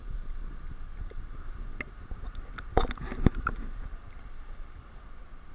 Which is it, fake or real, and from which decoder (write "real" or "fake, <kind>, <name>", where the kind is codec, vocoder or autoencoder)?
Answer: real